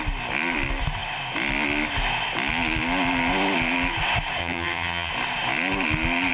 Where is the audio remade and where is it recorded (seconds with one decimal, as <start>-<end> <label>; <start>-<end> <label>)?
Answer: 0.0-4.4 recorded; 4.4-5.1 remade; 5.1-6.3 recorded